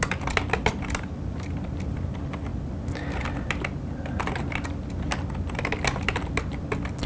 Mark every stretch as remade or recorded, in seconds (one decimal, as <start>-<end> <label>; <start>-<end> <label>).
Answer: 0.0-7.1 recorded